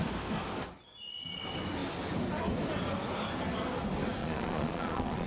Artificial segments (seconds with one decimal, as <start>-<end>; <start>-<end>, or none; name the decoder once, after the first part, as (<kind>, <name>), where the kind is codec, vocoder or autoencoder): 4.2-5.3 (vocoder, Vocos)